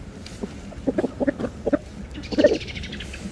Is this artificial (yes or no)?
yes